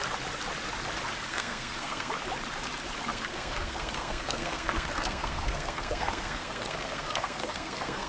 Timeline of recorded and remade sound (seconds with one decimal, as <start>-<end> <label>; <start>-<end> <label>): 0.0-1.3 recorded; 1.3-2.1 remade; 2.1-3.1 recorded; 3.1-8.1 remade

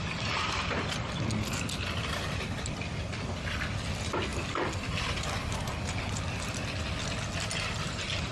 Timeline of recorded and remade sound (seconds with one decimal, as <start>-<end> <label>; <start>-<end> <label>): 0.0-8.3 recorded